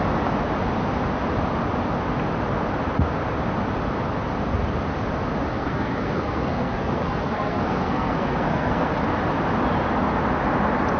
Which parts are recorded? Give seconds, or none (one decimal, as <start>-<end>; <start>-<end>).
0.0-5.5; 8.9-11.0